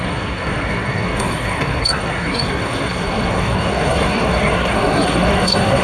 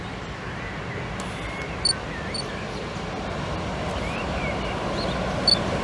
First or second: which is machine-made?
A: first